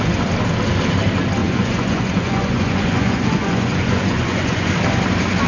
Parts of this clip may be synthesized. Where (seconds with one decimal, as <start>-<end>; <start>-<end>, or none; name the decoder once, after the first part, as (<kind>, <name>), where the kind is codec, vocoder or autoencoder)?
1.4-4.7 (vocoder, Vocos)